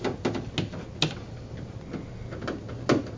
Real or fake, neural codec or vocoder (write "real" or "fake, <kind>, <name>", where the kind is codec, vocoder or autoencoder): real